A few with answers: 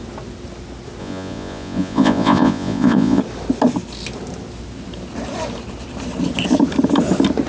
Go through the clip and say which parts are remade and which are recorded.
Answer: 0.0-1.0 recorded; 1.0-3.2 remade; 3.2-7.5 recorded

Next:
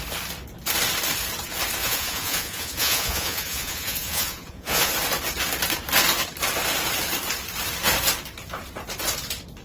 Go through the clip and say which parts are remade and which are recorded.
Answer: 0.0-1.8 recorded; 1.8-4.9 remade; 4.9-9.6 recorded

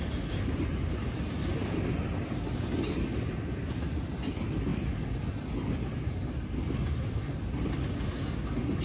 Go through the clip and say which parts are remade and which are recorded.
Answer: 0.0-8.8 recorded

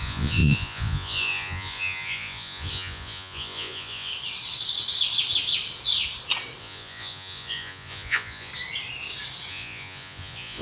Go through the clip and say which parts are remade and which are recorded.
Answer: 0.0-4.1 remade; 4.1-6.6 recorded; 6.6-8.5 remade; 8.5-9.5 recorded; 9.5-10.6 remade

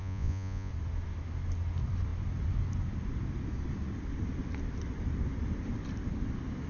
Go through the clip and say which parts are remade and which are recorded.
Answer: 0.0-0.7 remade; 0.7-6.7 recorded

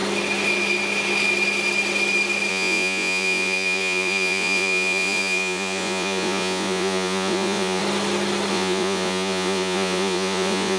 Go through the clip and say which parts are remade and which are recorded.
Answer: 0.0-2.5 recorded; 2.5-7.8 remade; 7.8-8.5 recorded; 8.5-10.8 remade